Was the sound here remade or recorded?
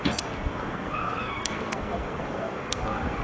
remade